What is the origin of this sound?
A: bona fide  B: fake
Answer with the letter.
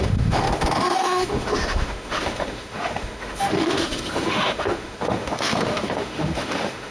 B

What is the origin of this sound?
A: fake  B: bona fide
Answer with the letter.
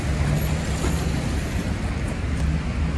B